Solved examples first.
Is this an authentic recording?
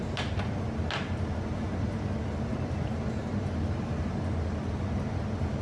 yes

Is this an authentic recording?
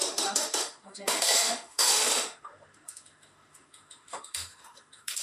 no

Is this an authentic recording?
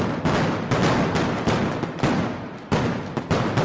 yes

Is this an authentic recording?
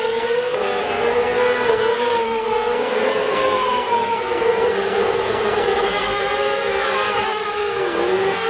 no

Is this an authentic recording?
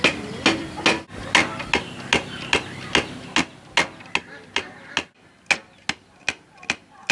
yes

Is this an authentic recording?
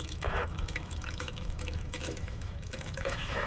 no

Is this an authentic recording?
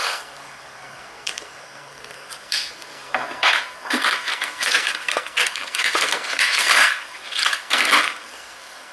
no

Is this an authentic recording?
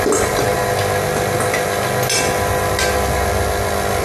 yes